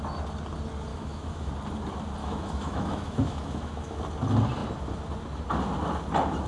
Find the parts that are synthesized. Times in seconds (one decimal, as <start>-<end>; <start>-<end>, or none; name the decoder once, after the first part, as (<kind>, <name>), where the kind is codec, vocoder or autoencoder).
0.9-1.5 (autoencoder, DAC-VAE); 2.2-4.0